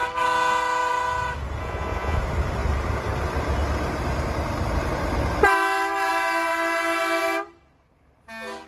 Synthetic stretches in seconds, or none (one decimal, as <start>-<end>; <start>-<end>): 1.6-2.2